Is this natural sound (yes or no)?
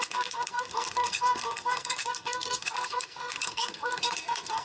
no